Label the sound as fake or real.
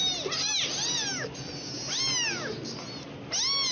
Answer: real